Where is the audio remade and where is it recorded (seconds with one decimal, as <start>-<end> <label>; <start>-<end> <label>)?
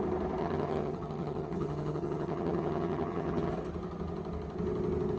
0.0-0.4 recorded; 0.4-3.5 remade; 3.5-5.2 recorded